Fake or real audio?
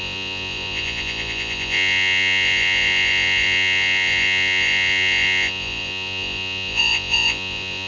fake